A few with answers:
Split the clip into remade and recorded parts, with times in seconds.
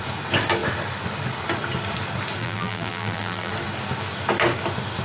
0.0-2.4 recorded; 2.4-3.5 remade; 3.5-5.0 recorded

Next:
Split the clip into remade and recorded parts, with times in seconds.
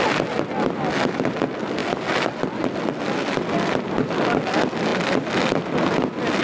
0.0-6.4 recorded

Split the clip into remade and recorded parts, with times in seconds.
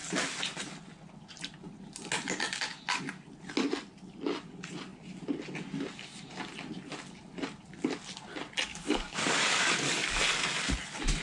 0.0-8.7 recorded; 8.7-10.2 remade; 10.2-11.2 recorded